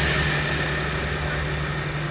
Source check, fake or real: real